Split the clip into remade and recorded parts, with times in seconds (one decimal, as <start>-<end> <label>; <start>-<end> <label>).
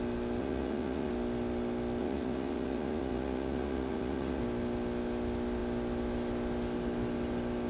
0.0-0.4 recorded; 0.4-1.1 remade; 1.1-2.0 recorded; 2.0-4.4 remade; 4.4-7.7 recorded